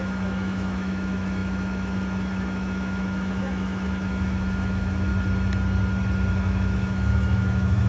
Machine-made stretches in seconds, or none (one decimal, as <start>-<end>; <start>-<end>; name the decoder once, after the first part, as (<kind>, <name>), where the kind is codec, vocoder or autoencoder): 0.0-5.1 (autoencoder, DAC-VAE); 6.3-7.9